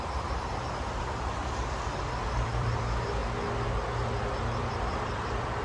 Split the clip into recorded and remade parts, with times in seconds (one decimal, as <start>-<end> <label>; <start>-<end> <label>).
0.0-3.2 remade; 3.2-4.3 recorded; 4.3-5.6 remade